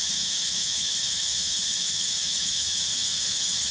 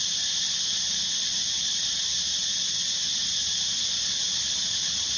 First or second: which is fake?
first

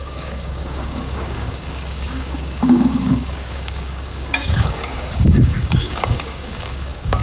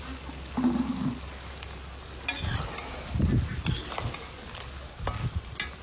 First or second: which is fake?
first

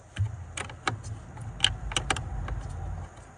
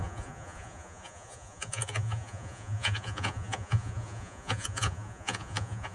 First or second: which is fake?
second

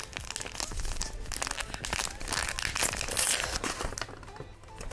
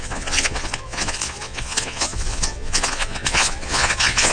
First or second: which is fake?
second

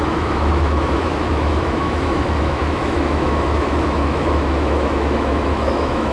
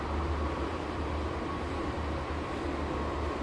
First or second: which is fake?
first